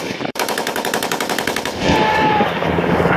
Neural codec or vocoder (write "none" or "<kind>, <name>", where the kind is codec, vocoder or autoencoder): codec, DAC